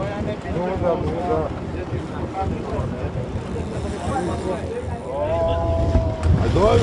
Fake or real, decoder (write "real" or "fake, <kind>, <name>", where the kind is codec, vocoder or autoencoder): real